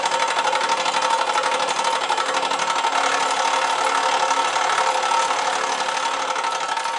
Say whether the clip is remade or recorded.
recorded